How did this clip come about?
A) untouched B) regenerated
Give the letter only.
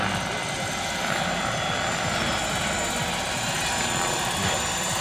A